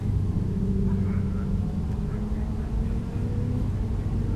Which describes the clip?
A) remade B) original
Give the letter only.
B